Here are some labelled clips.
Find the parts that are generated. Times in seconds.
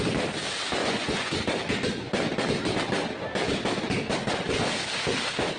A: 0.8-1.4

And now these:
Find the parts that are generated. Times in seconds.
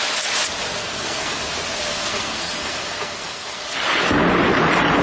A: 0.8-1.4; 1.9-3.8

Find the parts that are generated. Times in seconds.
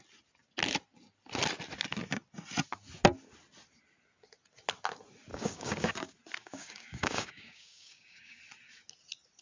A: 5.3-5.9; 6.4-8.4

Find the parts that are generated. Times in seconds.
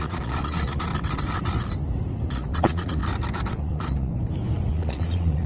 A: 0.0-0.9; 2.3-3.0; 3.5-4.1; 4.7-5.5